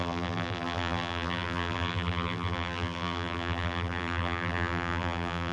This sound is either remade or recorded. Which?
remade